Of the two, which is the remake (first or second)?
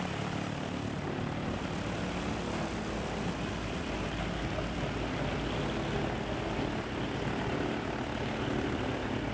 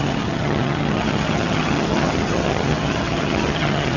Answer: second